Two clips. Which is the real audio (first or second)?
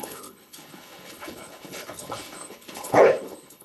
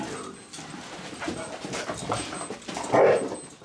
second